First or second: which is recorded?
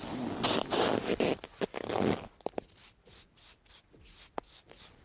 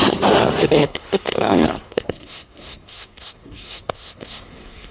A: first